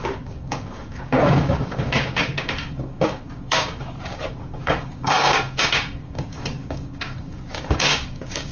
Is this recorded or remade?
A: remade